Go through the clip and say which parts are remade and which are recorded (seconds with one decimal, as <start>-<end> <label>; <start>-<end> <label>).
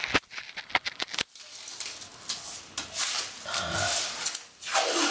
0.0-5.1 recorded